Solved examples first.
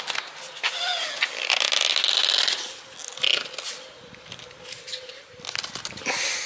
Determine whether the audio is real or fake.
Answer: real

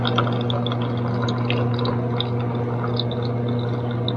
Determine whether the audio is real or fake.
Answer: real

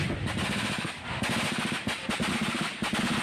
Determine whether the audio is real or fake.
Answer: real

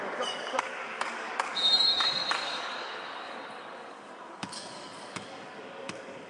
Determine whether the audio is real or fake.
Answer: fake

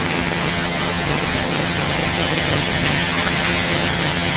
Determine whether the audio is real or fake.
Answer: fake